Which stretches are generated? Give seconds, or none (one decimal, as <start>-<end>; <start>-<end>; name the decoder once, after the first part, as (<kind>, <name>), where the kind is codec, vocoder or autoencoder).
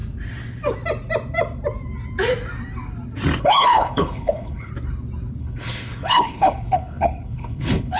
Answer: 3.4-4.7 (codec, HILCodec); 5.4-8.0